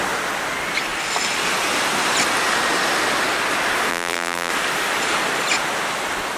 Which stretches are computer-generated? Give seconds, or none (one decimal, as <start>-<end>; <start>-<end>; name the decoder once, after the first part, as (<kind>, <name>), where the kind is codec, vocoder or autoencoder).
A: 3.9-4.5 (vocoder, BigVGAN v2)